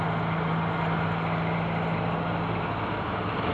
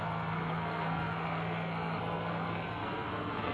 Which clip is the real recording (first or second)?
first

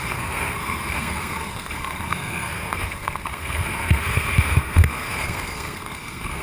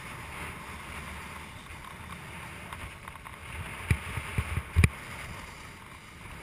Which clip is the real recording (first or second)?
second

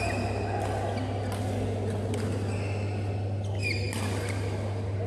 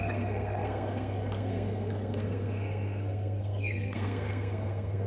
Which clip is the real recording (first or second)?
first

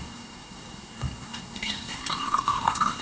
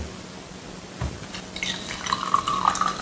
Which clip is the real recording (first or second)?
second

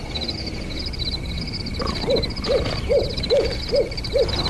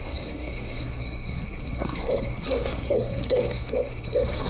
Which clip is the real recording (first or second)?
first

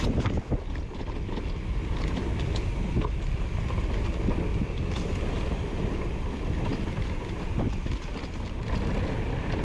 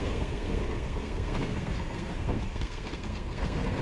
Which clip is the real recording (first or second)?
first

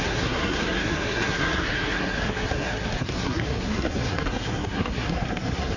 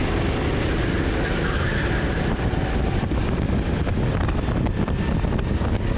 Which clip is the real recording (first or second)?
second